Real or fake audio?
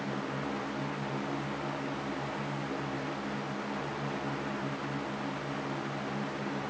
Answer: real